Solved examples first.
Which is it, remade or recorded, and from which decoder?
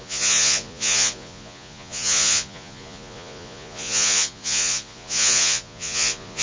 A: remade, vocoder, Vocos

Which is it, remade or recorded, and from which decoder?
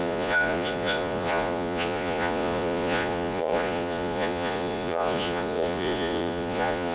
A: remade, vocoder, Vocos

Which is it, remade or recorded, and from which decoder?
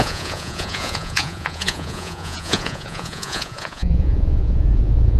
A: remade, vocoder, Vocos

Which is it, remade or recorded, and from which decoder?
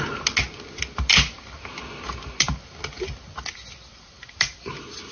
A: recorded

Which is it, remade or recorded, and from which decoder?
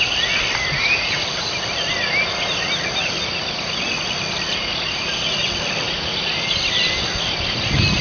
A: recorded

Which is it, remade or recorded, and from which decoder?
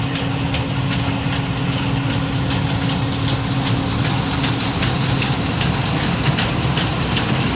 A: recorded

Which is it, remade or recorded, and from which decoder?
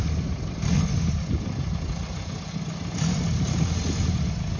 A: recorded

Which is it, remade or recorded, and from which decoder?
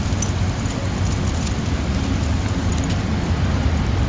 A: recorded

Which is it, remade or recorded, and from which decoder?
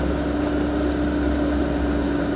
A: recorded